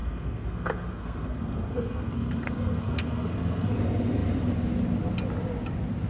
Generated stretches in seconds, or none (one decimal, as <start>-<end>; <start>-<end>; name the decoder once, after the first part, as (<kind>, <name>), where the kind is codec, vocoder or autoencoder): 0.0-3.7 (codec, SNAC)

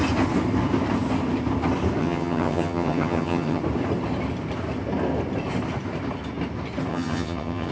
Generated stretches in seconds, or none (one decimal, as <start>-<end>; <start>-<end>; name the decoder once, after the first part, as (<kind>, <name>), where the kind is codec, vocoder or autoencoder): 2.0-3.6 (vocoder, HiFi-GAN); 6.9-7.7

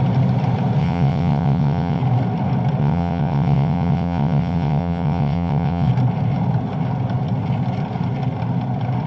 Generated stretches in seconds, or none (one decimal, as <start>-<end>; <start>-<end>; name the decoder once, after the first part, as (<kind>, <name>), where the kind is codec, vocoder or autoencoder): 0.8-2.0 (vocoder, WaveNeXt); 2.8-5.9

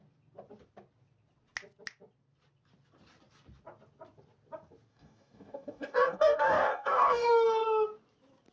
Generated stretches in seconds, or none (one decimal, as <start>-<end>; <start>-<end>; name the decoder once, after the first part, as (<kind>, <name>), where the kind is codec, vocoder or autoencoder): 4.9-7.3 (codec, DAC)

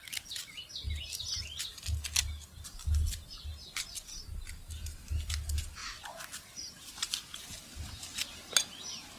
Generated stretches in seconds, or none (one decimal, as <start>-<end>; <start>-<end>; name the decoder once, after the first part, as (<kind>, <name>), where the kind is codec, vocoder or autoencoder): none

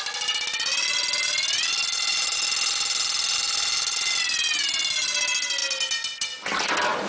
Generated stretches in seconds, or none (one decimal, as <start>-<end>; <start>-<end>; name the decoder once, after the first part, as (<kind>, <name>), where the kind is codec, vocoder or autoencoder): none

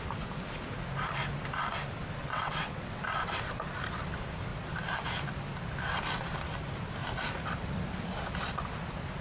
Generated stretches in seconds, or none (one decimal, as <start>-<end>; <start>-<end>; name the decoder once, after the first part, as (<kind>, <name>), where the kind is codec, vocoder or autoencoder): 2.2-3.0 (vocoder, WaveNeXt)